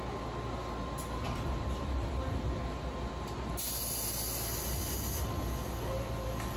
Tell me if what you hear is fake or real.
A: real